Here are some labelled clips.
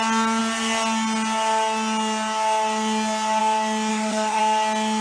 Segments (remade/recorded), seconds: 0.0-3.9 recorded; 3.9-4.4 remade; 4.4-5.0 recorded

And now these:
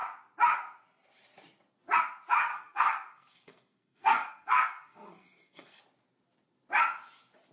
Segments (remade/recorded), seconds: 0.0-2.5 recorded; 2.5-5.8 remade; 5.8-7.5 recorded

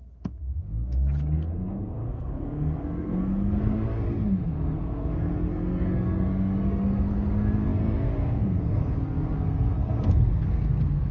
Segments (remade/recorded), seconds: 0.0-11.1 remade